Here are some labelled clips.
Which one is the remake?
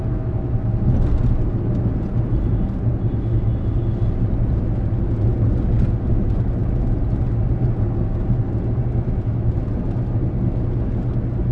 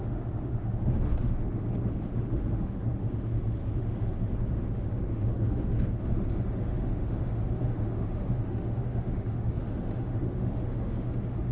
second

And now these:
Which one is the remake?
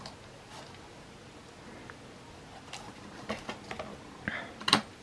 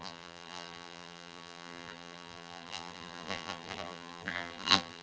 second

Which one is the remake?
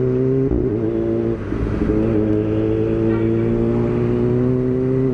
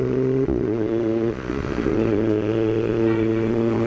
second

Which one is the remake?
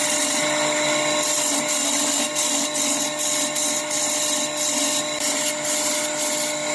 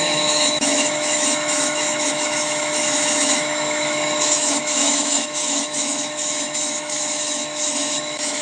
second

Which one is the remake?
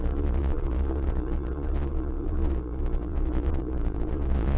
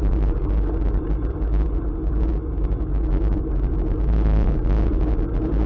first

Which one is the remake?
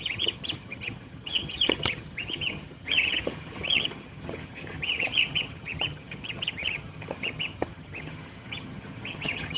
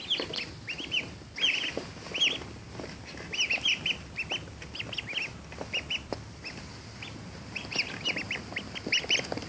first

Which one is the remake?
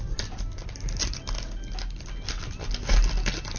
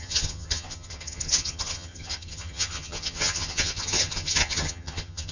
second